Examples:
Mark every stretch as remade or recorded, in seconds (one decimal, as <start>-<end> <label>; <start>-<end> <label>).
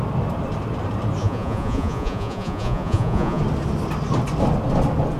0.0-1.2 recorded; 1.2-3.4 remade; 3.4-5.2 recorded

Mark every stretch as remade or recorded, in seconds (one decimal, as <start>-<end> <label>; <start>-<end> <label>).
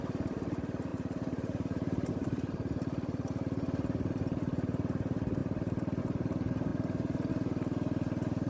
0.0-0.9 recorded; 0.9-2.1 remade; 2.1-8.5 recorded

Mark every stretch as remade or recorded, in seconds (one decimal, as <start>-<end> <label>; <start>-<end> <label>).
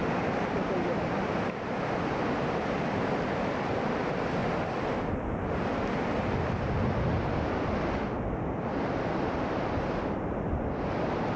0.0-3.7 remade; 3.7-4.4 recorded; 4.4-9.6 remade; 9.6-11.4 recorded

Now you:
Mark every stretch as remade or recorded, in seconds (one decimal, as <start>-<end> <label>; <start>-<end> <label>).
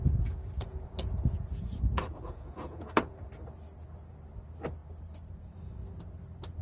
0.0-3.3 remade; 3.3-6.6 recorded